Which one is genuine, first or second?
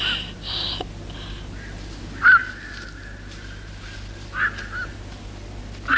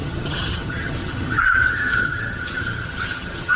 first